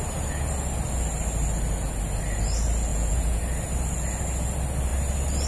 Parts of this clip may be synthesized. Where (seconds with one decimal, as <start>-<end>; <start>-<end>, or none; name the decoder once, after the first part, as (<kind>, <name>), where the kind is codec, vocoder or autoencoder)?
2.9-3.4 (vocoder, Vocos)